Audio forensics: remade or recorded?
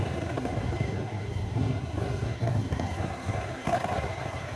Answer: remade